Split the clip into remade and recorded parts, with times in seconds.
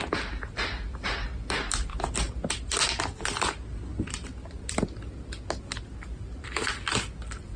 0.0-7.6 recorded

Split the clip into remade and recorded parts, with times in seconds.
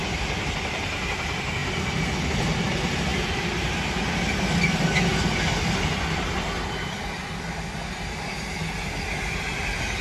0.0-10.0 recorded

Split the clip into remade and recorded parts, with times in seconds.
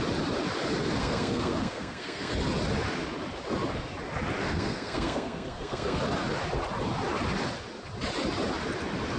0.0-1.0 recorded; 1.0-2.3 remade; 2.3-4.4 recorded; 4.4-6.0 remade; 6.0-9.2 recorded